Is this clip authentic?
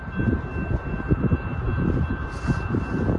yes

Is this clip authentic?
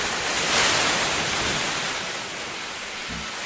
yes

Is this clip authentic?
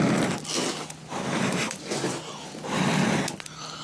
yes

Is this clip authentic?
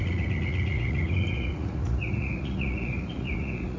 no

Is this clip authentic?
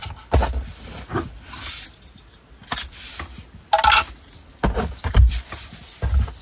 yes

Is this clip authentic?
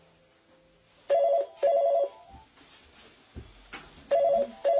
yes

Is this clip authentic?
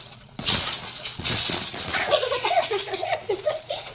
no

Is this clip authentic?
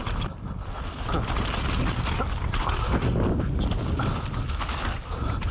yes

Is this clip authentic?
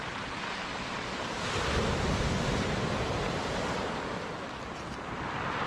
yes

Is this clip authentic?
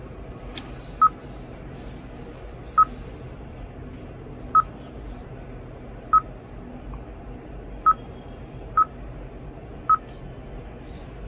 yes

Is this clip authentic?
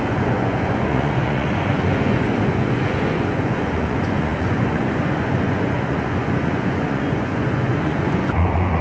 no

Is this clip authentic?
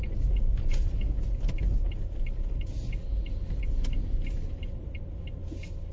yes